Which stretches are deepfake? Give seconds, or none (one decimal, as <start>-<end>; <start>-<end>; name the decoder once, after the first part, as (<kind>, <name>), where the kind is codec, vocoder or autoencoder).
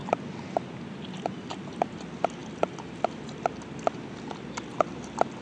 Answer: none